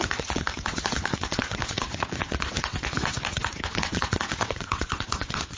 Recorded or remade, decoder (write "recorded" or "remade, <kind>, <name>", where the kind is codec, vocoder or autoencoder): remade, vocoder, WaveNeXt